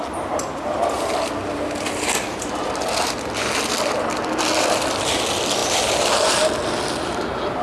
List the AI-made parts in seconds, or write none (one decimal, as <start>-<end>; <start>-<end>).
none